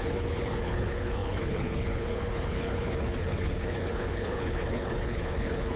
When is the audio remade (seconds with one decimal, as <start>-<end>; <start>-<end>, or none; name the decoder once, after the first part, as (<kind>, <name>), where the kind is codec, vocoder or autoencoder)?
0.0-5.8 (codec, HILCodec)